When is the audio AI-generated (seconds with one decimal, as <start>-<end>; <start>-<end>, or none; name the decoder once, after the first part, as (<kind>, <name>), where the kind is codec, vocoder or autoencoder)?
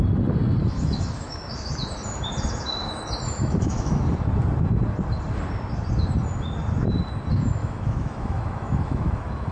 0.6-1.7 (autoencoder, DAC-VAE); 2.8-4.0; 7.6-9.5